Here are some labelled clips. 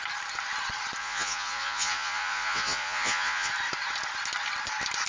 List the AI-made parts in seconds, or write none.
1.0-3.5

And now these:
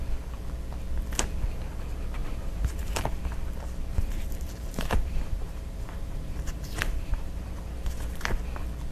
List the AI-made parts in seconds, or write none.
2.2-2.9; 3.9-7.4

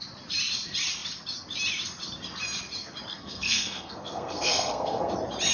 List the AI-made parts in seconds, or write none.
3.1-5.1

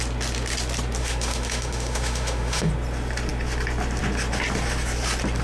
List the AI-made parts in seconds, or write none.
1.0-2.7

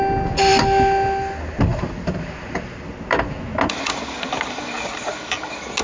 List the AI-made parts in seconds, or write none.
none

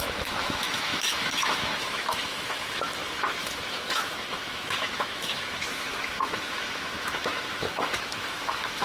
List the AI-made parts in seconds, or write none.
0.0-8.8